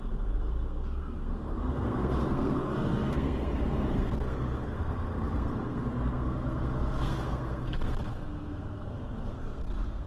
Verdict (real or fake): fake